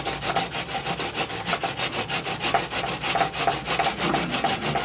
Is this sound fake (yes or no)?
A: no